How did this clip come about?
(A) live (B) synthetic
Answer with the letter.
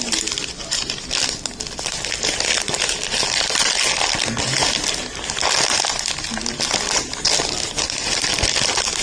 A